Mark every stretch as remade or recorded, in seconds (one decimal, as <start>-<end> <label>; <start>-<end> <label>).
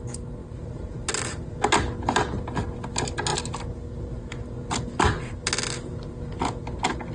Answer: 0.0-0.4 recorded; 0.4-1.5 remade; 1.5-7.1 recorded